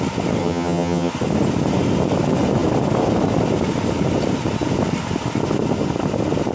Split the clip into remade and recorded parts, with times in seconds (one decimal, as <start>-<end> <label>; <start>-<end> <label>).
0.0-0.4 recorded; 0.4-1.1 remade; 1.1-6.5 recorded